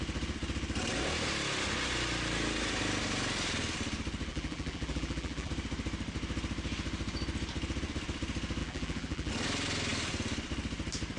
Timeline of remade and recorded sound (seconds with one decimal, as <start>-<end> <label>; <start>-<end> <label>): 0.0-4.3 recorded; 4.3-5.5 remade; 5.5-8.6 recorded; 8.6-9.3 remade; 9.3-11.2 recorded